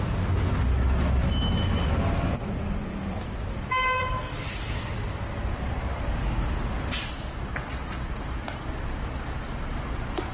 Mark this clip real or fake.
real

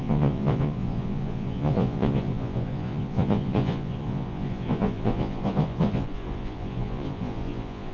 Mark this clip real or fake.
fake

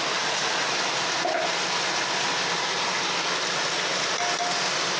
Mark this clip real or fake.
real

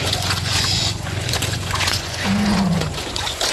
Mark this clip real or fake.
fake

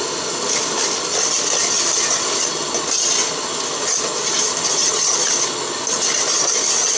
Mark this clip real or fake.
real